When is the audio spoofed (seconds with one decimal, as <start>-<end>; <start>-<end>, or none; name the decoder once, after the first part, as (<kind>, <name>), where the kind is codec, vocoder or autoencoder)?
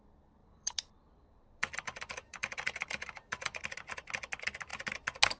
0.4-3.6 (vocoder, BigVGAN v2)